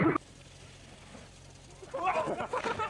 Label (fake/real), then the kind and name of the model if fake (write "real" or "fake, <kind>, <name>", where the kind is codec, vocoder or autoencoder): real